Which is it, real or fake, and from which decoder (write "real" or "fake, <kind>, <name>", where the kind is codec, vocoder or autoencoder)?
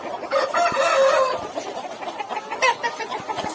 real